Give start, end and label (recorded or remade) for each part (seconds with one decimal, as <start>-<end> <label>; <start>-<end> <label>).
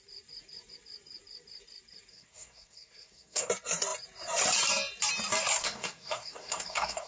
0.0-2.1 recorded; 2.1-3.5 remade; 3.5-5.6 recorded; 5.6-7.1 remade